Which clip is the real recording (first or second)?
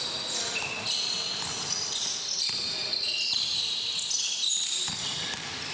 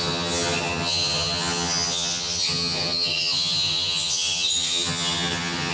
first